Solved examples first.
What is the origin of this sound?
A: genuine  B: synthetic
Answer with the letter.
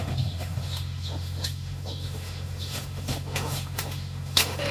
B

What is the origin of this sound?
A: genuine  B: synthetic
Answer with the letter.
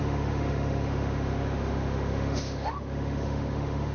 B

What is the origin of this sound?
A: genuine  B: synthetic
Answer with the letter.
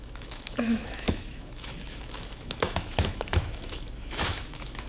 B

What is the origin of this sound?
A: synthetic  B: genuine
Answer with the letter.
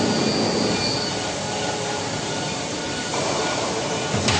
B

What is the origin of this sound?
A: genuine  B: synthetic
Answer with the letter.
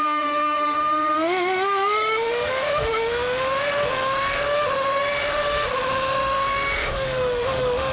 B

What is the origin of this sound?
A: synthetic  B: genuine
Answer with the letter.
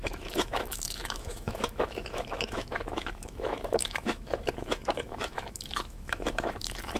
A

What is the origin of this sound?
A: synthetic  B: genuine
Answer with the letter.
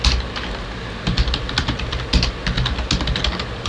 B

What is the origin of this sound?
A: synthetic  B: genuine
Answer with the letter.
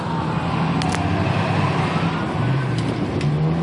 B